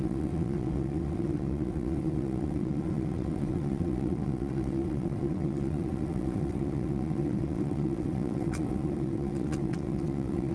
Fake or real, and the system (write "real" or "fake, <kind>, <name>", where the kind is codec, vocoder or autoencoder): fake, vocoder, WaveNeXt